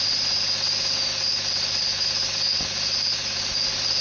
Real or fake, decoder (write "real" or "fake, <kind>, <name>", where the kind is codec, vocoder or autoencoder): real